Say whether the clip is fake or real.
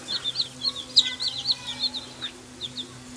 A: real